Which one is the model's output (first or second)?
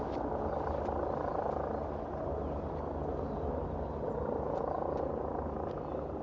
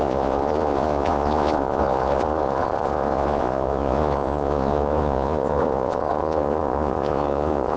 second